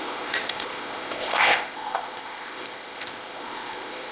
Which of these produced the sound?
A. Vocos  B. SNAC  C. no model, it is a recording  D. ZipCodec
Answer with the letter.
D